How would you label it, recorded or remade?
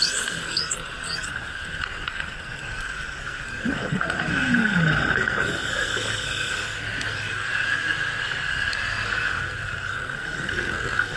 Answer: remade